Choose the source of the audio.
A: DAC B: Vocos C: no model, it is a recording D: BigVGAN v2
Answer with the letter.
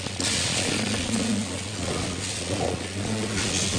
B